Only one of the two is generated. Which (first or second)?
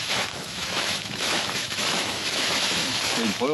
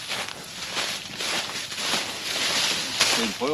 first